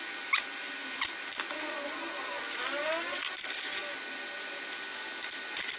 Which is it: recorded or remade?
recorded